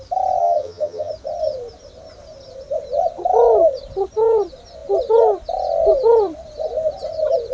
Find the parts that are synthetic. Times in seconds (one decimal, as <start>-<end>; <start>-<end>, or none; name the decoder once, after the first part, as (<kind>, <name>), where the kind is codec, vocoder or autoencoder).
0.4-1.1 (vocoder, HiFi-GAN)